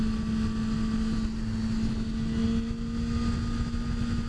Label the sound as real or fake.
real